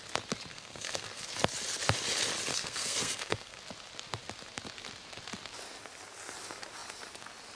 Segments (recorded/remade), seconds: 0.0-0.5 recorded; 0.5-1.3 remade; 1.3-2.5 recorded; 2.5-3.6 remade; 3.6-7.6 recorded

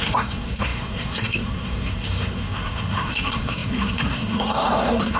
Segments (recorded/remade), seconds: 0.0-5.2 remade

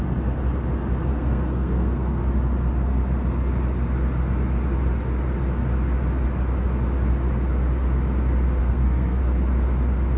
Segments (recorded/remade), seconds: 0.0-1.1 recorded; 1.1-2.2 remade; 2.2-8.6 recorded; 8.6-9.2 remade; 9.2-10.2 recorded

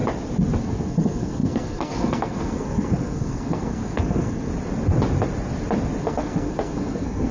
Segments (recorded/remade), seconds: 0.0-0.6 recorded; 0.6-4.5 remade; 4.5-6.0 recorded; 6.0-7.3 remade

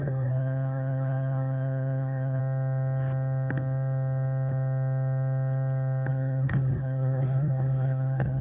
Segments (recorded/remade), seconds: 0.0-2.4 remade; 2.4-6.1 recorded; 6.1-8.4 remade

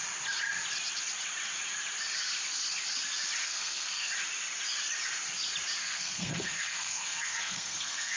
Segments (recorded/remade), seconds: 0.0-3.4 recorded; 3.4-4.1 remade; 4.1-5.8 recorded; 5.8-8.2 remade

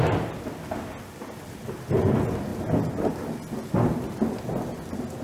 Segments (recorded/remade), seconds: 0.0-5.2 recorded